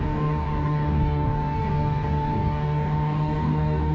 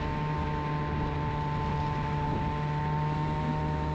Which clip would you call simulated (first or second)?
first